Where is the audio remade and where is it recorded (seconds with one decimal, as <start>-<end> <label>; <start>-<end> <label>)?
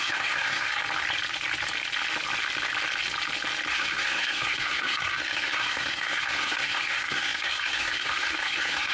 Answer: 0.0-0.8 remade; 0.8-3.7 recorded; 3.7-8.9 remade